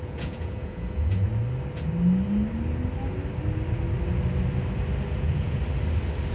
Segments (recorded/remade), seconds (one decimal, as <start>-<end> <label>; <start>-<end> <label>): 0.0-1.3 remade; 1.3-5.1 recorded; 5.1-5.6 remade; 5.6-6.3 recorded